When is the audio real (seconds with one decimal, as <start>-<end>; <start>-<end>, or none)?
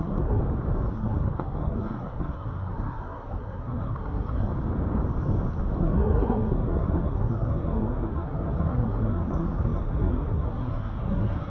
0.4-0.9; 4.5-5.8